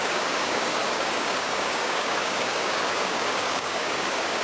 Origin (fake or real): fake